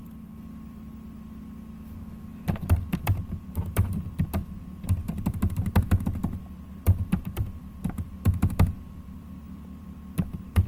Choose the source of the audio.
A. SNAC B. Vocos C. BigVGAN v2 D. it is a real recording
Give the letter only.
C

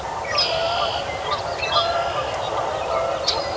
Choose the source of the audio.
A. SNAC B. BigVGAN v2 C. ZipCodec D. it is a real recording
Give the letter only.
D